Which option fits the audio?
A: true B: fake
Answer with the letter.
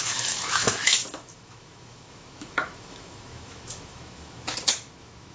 B